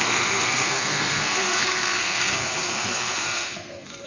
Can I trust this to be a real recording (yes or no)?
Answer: no